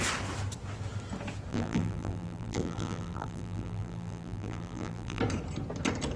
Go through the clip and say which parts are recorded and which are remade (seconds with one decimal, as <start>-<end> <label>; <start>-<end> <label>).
0.0-1.5 recorded; 1.5-5.2 remade; 5.2-6.2 recorded